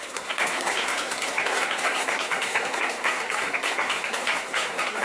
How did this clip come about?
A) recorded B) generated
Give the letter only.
B